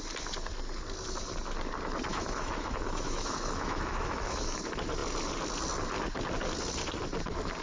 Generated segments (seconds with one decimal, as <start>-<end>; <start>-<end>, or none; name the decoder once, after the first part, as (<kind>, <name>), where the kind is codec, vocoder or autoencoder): 2.1-4.6 (autoencoder, DAC-VAE)